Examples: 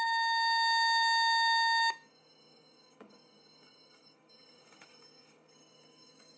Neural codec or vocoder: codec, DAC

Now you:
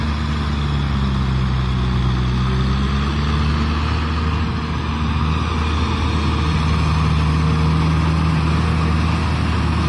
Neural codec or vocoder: none